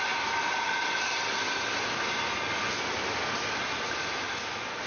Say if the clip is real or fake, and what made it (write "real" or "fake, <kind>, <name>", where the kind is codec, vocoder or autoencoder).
real